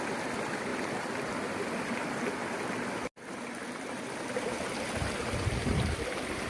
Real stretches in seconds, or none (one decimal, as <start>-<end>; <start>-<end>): 0.0-0.7; 2.1-6.5